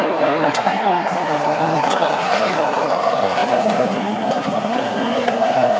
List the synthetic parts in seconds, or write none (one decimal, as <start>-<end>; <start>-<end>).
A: 0.0-5.8